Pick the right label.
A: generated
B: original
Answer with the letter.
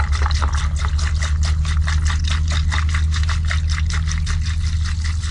B